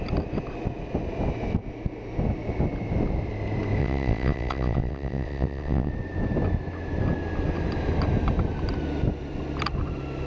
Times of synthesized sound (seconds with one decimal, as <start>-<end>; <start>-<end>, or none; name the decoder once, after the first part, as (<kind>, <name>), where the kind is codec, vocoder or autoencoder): 3.8-5.9 (vocoder, WaveNeXt)